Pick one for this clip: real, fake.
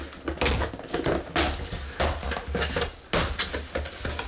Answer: real